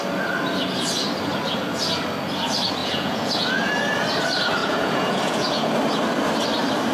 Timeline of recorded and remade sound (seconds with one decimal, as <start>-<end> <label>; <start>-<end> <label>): 0.0-2.8 recorded; 2.8-3.3 remade; 3.3-4.6 recorded; 4.6-5.7 remade; 5.7-6.9 recorded